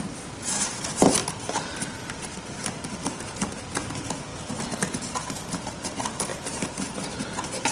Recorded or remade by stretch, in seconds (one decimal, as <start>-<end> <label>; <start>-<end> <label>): 0.0-6.3 recorded; 6.3-6.9 remade; 6.9-7.7 recorded